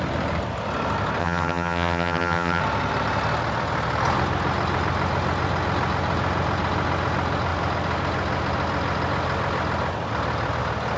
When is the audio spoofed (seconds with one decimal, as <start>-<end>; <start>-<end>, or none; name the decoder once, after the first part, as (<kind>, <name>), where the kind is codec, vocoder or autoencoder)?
1.2-2.6 (vocoder, HiFi-GAN)